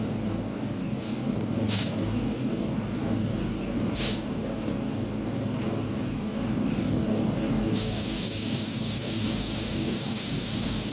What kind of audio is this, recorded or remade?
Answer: remade